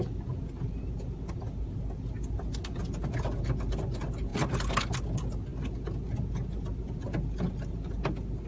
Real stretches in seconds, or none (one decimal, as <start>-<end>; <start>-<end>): 0.0-8.5